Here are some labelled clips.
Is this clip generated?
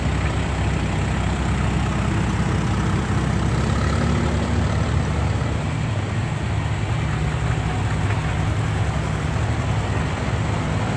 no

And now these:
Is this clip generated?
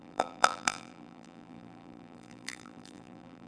yes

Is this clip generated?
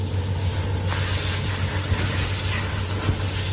no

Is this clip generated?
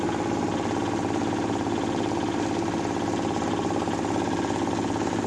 no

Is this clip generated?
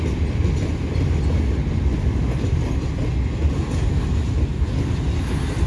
no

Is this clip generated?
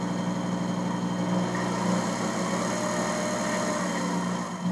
no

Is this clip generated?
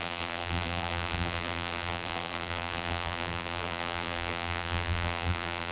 yes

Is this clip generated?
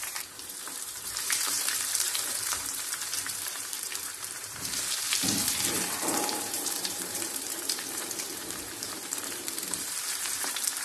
yes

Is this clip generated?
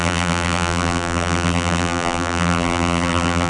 yes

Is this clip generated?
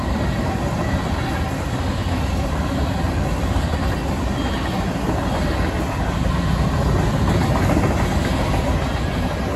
no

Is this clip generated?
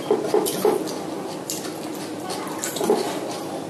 no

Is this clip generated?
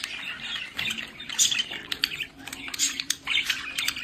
yes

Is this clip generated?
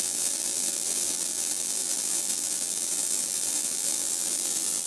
yes